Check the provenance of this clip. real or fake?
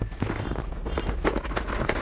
real